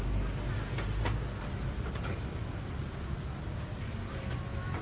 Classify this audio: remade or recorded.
recorded